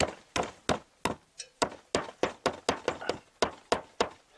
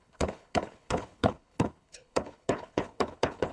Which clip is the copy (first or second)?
second